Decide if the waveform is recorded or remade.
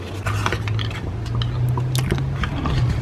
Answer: recorded